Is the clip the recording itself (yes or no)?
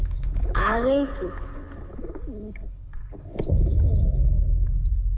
no